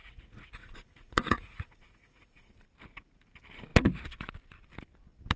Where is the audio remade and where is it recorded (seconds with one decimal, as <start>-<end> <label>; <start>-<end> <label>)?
0.0-2.5 remade; 2.5-5.4 recorded